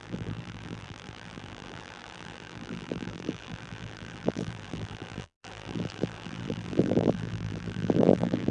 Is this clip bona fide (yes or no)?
no